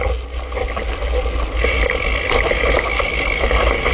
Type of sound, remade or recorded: recorded